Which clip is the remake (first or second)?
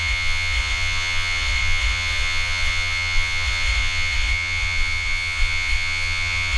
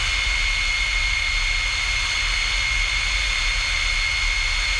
first